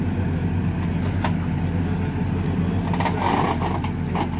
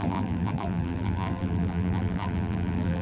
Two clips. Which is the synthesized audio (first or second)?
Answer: second